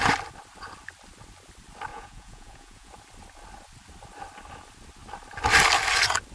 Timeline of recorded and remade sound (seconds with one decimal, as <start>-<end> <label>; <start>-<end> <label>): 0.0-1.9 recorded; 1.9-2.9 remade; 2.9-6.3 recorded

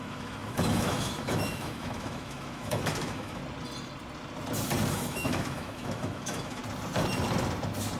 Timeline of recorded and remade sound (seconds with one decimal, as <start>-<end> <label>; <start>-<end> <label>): 0.0-3.4 remade; 3.4-4.9 recorded; 4.9-6.6 remade; 6.6-8.0 recorded

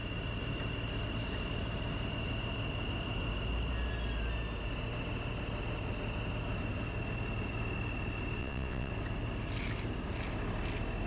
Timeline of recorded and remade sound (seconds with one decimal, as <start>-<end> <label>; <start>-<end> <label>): 0.0-8.4 recorded; 8.4-8.9 remade; 8.9-11.1 recorded

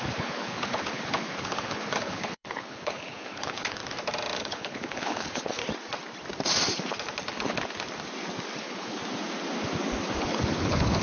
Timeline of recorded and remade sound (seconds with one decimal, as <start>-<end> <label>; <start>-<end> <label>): 0.0-3.8 remade; 3.8-4.4 recorded; 4.4-5.6 remade; 5.6-8.6 recorded; 8.6-9.0 remade; 9.0-10.2 recorded; 10.2-11.0 remade